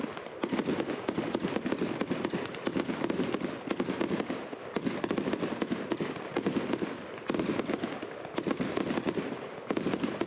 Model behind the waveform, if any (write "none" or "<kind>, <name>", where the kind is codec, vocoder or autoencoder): none